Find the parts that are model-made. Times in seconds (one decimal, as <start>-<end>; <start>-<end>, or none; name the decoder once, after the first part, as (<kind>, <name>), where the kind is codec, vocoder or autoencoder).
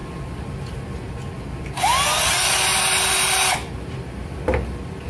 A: none